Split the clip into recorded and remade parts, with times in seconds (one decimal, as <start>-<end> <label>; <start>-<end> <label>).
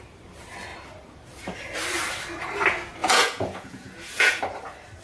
0.0-3.0 recorded; 3.0-4.4 remade; 4.4-5.0 recorded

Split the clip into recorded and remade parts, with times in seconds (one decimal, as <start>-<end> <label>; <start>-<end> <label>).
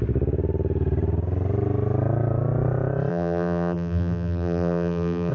0.0-3.1 recorded; 3.1-5.3 remade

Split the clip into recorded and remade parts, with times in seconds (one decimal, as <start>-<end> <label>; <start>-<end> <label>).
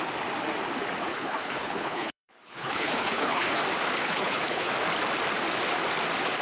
0.0-1.0 recorded; 1.0-3.6 remade; 3.6-4.0 recorded; 4.0-4.7 remade; 4.7-6.4 recorded